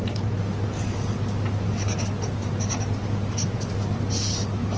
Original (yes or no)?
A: yes